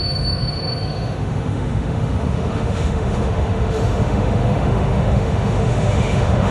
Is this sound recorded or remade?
remade